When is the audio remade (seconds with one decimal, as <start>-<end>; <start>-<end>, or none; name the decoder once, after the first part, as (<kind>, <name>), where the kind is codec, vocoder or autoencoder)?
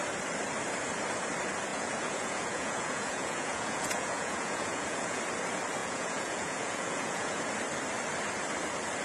1.7-5.2 (vocoder, Vocos); 5.8-7.5